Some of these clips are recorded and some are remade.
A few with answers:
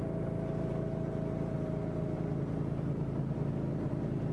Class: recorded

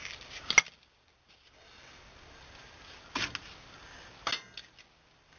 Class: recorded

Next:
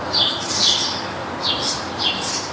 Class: recorded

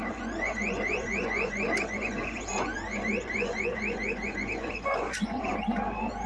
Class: remade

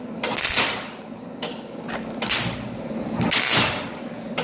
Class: recorded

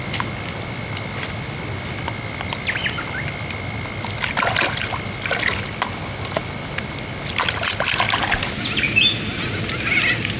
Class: recorded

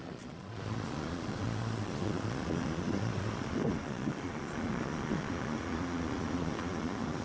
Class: remade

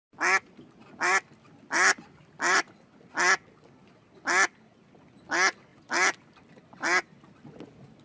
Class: recorded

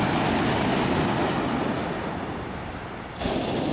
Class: recorded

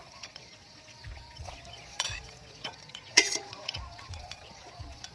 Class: remade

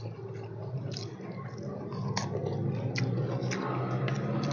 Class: recorded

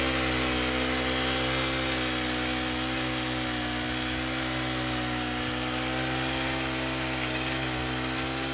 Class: recorded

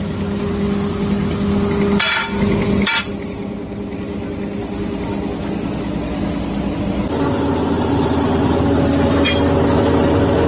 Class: recorded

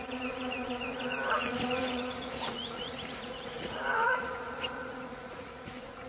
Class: remade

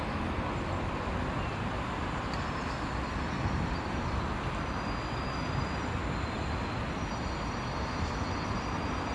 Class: recorded